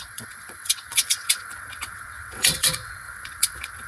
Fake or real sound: fake